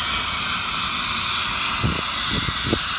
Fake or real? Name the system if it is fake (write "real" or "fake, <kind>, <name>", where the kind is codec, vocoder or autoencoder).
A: real